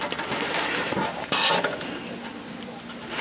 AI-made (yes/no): no